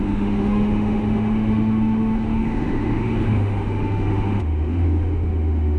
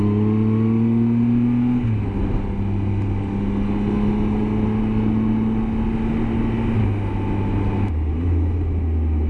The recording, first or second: second